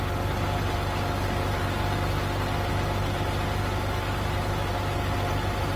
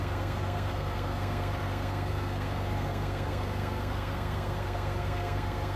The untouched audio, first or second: first